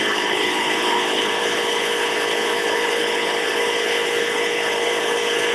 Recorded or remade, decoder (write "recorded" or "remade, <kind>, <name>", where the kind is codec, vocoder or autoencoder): remade, codec, HILCodec